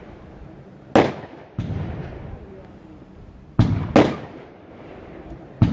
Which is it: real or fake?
real